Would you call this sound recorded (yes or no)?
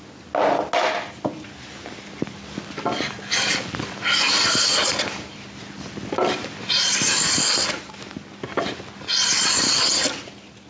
yes